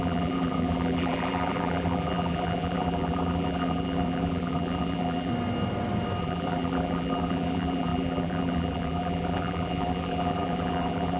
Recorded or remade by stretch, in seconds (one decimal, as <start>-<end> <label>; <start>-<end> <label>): 0.0-5.3 remade; 5.3-6.2 recorded; 6.2-11.2 remade